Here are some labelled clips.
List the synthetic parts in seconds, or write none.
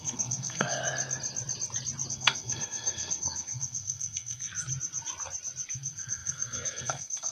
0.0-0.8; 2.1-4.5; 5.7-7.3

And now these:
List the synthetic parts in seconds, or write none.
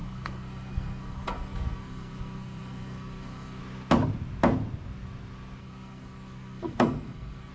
0.0-3.6; 5.6-7.5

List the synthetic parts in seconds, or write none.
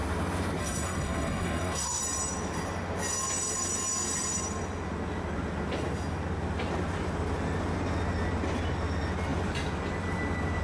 0.6-2.0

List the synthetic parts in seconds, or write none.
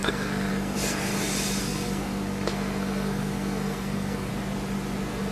0.0-1.1; 1.6-4.3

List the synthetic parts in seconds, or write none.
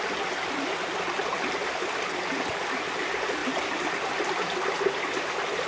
none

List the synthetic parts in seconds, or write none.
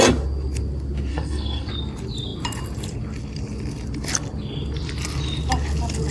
1.1-1.7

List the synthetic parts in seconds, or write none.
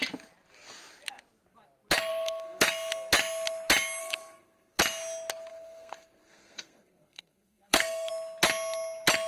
2.1-2.7; 4.0-4.8; 5.5-8.1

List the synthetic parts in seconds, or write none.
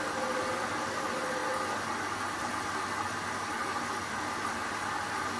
none